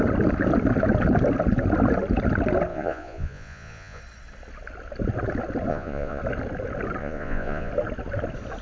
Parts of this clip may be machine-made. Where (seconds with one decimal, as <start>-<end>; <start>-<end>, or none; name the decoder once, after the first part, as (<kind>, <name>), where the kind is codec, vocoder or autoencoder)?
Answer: 2.7-4.0 (vocoder, Vocos); 5.7-6.2; 7.0-7.7